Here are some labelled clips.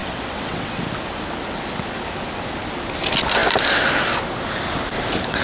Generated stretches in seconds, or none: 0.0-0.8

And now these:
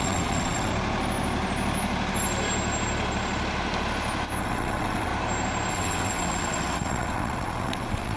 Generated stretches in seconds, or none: 0.0-0.7; 4.4-5.1; 5.7-8.2

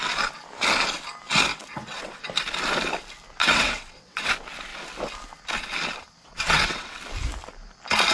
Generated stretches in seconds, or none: 1.5-2.2; 3.4-4.3; 6.2-7.0

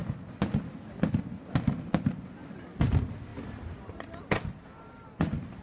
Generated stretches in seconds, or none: none

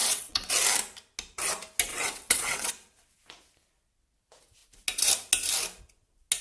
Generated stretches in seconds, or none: 0.0-0.5; 1.9-2.7

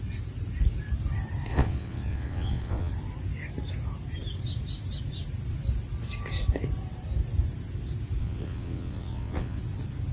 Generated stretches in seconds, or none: 1.5-2.9; 8.2-9.6